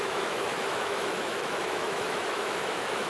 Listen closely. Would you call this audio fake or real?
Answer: fake